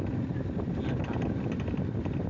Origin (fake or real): real